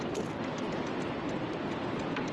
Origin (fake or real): real